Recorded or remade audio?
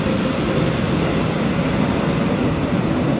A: recorded